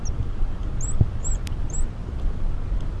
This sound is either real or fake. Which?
real